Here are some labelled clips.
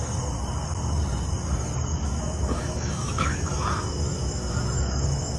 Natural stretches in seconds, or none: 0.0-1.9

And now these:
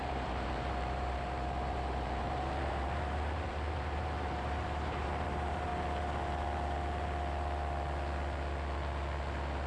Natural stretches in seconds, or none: 5.7-9.7

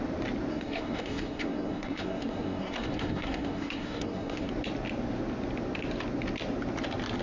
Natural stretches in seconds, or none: 0.0-0.5; 4.5-7.2